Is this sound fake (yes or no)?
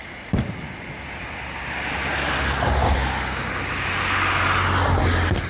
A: no